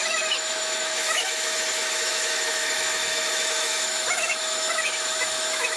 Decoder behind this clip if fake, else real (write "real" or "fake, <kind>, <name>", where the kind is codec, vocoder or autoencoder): fake, autoencoder, DAC-VAE